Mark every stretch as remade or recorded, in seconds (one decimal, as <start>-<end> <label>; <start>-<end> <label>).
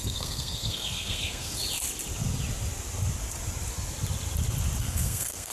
0.0-1.5 remade; 1.5-4.8 recorded; 4.8-5.5 remade